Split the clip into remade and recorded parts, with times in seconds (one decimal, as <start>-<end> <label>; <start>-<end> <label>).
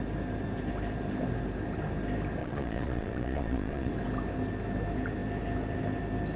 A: 0.0-2.4 recorded; 2.4-3.9 remade; 3.9-6.4 recorded